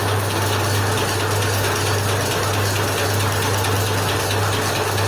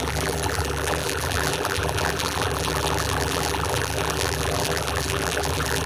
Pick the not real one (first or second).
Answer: second